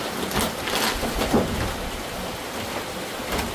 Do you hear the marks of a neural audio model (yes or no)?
no